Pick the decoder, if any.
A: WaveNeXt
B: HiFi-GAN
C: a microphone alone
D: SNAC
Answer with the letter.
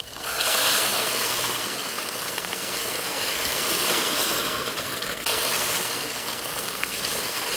D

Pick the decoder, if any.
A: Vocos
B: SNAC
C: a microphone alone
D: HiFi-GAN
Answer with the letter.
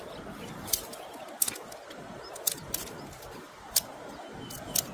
C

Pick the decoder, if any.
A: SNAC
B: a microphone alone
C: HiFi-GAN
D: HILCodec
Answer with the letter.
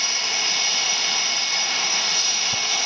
B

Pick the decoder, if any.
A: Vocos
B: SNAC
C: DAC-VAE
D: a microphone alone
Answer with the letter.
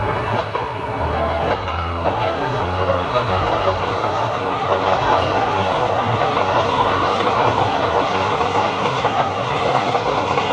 B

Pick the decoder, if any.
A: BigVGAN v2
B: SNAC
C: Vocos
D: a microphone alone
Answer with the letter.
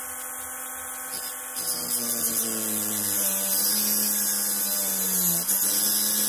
D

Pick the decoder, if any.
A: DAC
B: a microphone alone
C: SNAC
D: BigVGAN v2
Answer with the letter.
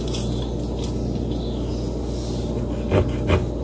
B